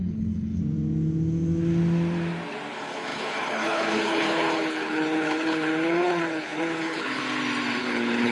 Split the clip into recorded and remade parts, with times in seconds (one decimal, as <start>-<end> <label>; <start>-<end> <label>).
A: 0.0-0.6 remade; 0.6-2.7 recorded; 2.7-7.2 remade; 7.2-7.8 recorded; 7.8-8.3 remade